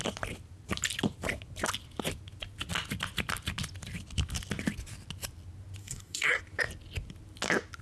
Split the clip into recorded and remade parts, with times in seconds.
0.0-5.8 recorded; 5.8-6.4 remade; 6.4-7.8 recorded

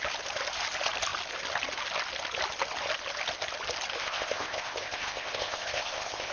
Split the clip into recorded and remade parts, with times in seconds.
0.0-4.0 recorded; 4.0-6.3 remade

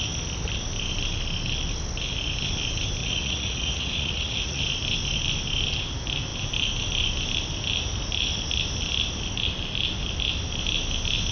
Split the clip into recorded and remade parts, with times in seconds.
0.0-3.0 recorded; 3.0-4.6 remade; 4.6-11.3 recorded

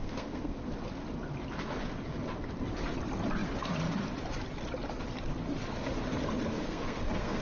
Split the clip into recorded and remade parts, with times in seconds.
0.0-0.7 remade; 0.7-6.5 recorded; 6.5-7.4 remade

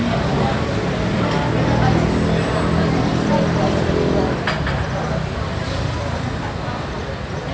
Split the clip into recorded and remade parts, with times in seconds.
0.0-7.5 recorded

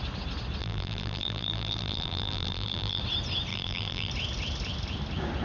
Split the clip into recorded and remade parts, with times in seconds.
0.0-0.6 recorded; 0.6-3.0 remade; 3.0-3.5 recorded; 3.5-4.1 remade; 4.1-5.4 recorded

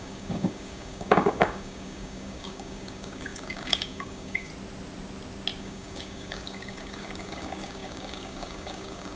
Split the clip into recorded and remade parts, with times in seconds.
0.0-4.5 remade; 4.5-5.6 recorded; 5.6-9.2 remade